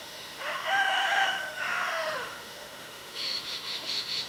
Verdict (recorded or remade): remade